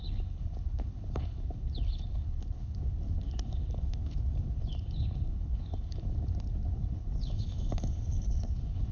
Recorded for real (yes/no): no